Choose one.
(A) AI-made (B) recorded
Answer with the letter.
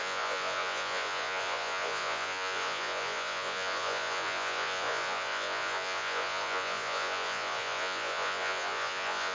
A